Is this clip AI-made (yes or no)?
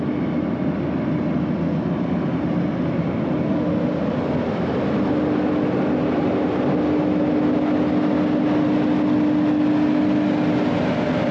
no